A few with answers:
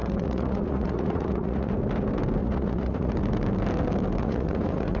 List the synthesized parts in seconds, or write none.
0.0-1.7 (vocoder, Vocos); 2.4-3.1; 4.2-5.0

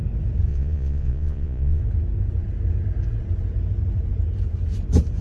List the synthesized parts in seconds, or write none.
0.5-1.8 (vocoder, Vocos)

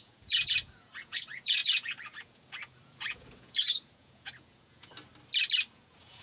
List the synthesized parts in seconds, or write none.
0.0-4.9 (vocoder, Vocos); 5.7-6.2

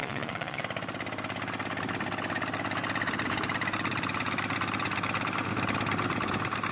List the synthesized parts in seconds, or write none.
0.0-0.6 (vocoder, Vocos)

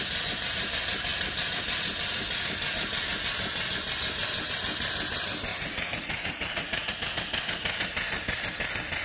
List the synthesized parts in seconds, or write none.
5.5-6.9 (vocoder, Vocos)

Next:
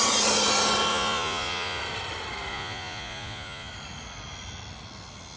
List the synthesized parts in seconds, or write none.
0.9-1.8 (vocoder, Vocos); 2.5-3.7

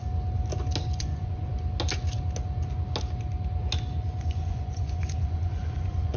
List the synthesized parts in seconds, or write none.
1.0-1.5 (vocoder, Vocos); 4.2-6.2

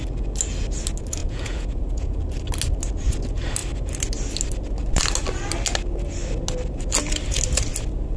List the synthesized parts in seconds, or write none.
1.2-2.2 (vocoder, Vocos)